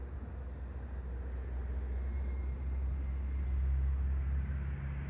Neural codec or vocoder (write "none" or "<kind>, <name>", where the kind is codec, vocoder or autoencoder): none